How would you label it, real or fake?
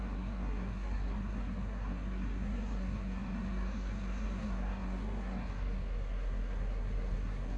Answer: fake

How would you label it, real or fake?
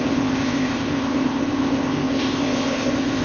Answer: fake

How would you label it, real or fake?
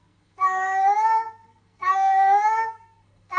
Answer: fake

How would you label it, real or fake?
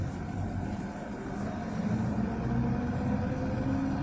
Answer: real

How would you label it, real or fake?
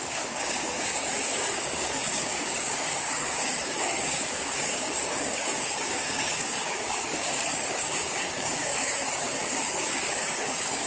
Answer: fake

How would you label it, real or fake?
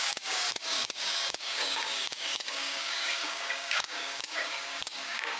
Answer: fake